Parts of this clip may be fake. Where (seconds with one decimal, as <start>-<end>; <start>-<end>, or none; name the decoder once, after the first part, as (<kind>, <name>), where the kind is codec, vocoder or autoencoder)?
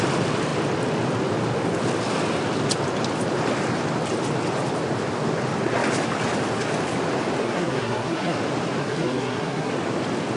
7.4-8.4 (codec, SNAC); 8.8-9.7